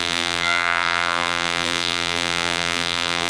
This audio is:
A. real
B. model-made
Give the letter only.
B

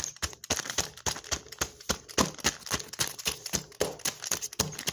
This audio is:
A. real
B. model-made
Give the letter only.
A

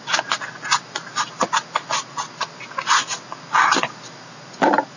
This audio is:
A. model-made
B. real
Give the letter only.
B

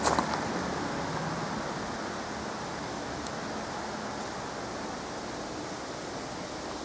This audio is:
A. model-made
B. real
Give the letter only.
B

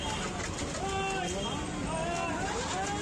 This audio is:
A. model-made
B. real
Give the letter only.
B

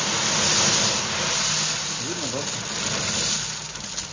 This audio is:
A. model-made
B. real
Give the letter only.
B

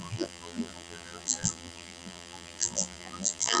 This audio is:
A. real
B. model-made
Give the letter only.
B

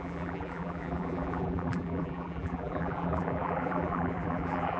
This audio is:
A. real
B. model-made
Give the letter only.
B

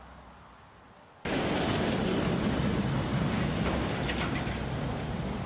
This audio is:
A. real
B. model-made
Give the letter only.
A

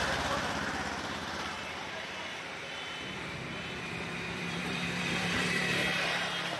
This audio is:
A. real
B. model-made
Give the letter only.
B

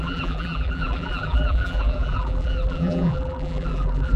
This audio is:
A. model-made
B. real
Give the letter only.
A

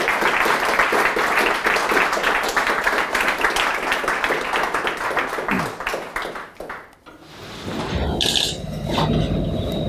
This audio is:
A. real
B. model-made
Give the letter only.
A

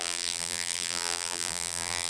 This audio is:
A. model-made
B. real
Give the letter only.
A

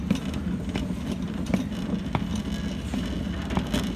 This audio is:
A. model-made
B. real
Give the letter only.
B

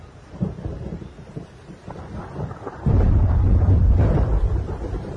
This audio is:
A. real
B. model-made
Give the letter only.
B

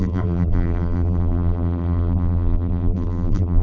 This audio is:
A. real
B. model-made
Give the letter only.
B